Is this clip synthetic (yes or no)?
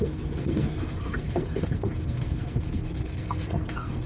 yes